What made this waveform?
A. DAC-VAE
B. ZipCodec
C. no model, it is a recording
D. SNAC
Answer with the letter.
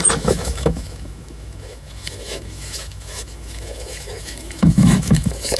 A